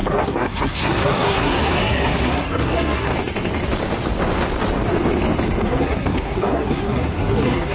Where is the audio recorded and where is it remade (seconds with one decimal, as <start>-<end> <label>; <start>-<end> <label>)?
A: 0.0-3.1 remade; 3.1-5.6 recorded; 5.6-7.7 remade